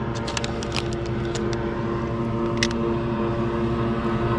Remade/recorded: recorded